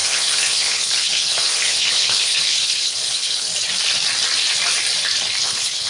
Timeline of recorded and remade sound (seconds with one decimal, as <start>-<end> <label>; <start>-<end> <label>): 0.0-3.5 remade; 3.5-5.4 recorded; 5.4-5.9 remade